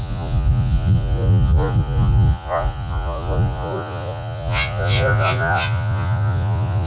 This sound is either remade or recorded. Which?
remade